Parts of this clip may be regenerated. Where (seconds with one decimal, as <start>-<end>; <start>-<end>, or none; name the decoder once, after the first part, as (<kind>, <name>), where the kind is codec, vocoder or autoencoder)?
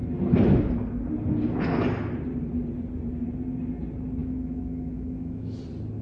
4.2-5.6 (autoencoder, DAC-VAE)